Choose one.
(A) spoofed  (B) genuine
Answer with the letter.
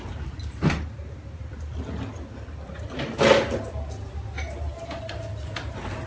B